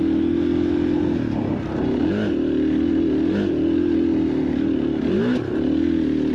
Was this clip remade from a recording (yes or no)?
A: no